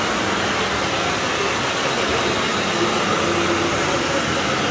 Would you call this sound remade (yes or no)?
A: no